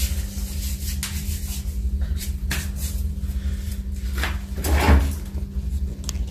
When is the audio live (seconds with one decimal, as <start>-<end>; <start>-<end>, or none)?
0.0-6.3